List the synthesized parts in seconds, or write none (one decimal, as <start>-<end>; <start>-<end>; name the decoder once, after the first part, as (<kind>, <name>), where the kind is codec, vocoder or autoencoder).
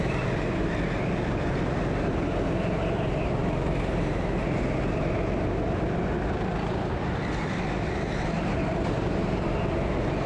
none